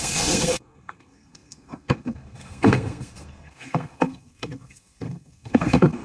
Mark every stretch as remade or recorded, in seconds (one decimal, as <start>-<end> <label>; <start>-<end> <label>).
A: 0.0-6.0 remade